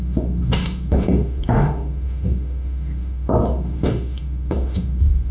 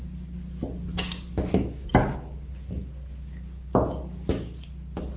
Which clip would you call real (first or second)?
second